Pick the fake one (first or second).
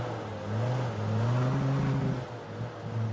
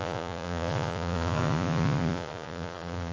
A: second